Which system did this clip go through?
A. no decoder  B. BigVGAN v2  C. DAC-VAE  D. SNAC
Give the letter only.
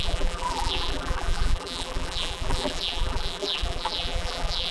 B